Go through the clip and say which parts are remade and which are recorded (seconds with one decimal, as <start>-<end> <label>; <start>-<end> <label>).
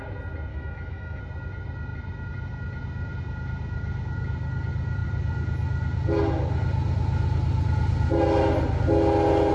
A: 0.0-0.5 recorded; 0.5-1.2 remade; 1.2-9.5 recorded